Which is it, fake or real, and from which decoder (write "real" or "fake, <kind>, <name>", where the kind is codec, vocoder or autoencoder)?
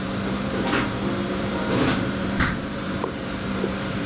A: fake, vocoder, BigVGAN v2